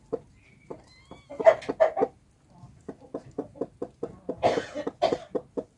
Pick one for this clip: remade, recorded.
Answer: recorded